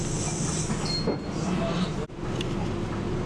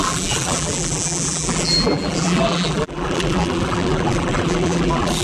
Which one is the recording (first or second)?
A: first